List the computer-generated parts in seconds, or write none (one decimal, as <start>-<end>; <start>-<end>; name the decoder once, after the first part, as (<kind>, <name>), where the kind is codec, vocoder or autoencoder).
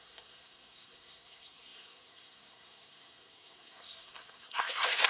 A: 0.0-5.1 (codec, SNAC)